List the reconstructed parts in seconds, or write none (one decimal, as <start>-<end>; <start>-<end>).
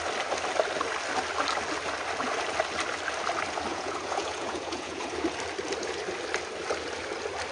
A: 3.7-5.1